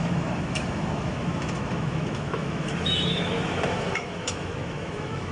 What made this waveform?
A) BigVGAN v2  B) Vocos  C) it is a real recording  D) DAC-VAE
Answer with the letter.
D